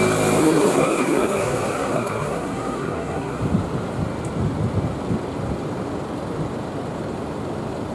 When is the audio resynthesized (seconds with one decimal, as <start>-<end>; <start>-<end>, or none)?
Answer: 0.4-3.4